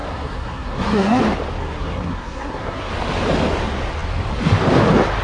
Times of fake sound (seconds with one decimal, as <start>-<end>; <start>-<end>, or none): 0.0-1.2; 1.6-2.9